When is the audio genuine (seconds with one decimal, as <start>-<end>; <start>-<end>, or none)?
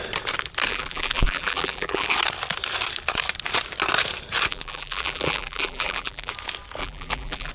0.0-0.7; 2.1-4.5; 6.3-6.8